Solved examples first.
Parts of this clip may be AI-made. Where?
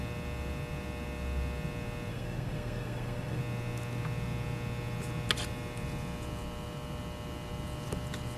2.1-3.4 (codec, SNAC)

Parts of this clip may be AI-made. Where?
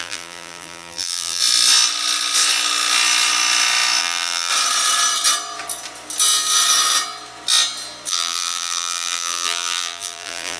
0.0-1.4 (vocoder, BigVGAN v2); 4.0-4.5; 8.1-10.6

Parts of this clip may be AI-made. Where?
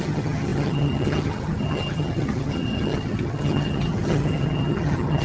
0.0-5.2 (vocoder, HiFi-GAN)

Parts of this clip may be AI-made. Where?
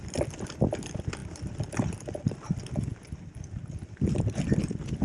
none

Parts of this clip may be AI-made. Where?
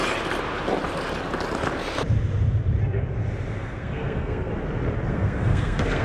3.6-4.5 (codec, SNAC); 5.1-6.0